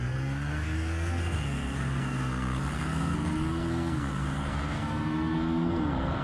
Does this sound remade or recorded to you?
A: remade